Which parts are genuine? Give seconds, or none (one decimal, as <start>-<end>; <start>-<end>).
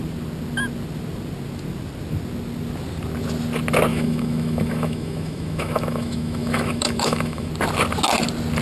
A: 0.0-3.9; 7.5-8.6